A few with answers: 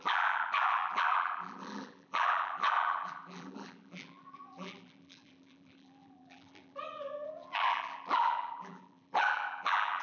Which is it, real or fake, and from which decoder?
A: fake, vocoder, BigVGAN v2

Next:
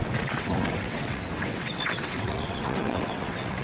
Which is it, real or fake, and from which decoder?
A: fake, vocoder, WaveNeXt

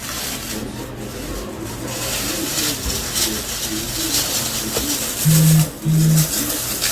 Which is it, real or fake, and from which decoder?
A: real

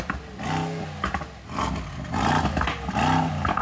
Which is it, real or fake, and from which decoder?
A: real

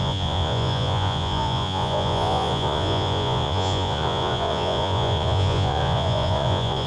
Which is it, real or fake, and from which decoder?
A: fake, vocoder, Vocos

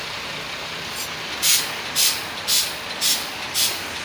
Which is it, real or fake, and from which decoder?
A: fake, vocoder, BigVGAN v2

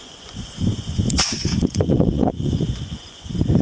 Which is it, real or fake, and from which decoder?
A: fake, vocoder, Vocos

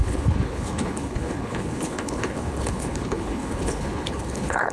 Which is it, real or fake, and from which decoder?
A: fake, codec, HILCodec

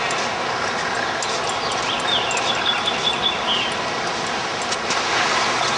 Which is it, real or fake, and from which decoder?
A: real